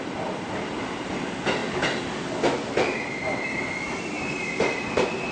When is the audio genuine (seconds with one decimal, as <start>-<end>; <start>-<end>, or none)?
0.0-5.3